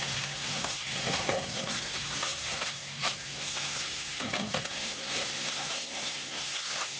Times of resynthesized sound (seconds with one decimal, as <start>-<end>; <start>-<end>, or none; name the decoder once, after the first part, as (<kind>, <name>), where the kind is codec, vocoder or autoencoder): 0.0-7.0 (codec, SNAC)

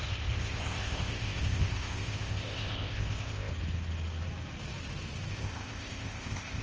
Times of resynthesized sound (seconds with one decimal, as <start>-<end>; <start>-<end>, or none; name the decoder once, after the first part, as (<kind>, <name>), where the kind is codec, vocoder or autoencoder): 0.0-3.5 (codec, ZipCodec); 5.3-6.6

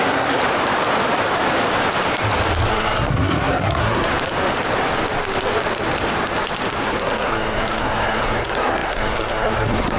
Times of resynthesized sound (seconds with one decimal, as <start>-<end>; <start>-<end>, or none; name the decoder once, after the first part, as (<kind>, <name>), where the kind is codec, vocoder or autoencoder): 0.0-0.4 (codec, SNAC); 2.7-4.1; 6.8-10.0

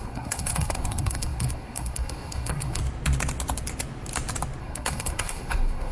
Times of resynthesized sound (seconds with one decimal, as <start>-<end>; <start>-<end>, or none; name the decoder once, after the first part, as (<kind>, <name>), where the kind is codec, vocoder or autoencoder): 0.0-2.8 (codec, SNAC); 4.6-5.9

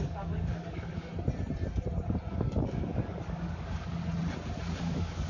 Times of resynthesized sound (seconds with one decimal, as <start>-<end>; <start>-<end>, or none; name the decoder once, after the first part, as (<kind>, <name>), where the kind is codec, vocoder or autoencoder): 0.0-1.1 (codec, DAC); 2.3-4.0; 4.8-5.3

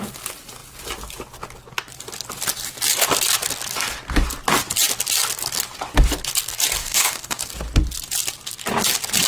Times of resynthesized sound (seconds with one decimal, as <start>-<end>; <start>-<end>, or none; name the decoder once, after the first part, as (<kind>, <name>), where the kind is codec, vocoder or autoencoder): 6.8-7.4 (codec, DAC)

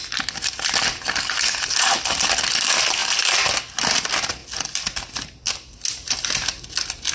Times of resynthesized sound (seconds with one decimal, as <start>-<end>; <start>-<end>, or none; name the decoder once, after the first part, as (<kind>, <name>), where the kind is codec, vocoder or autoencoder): none